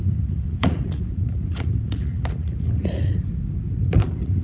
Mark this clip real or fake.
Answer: fake